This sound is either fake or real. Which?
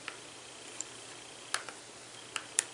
real